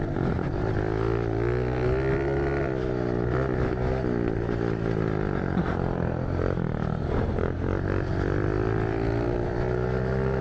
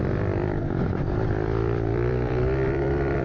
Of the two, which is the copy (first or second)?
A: second